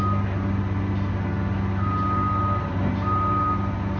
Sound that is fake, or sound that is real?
real